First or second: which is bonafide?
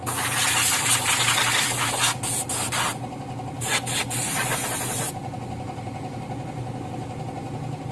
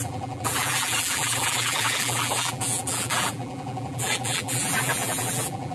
first